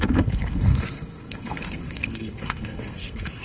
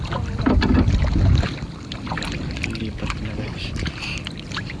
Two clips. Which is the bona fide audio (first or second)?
second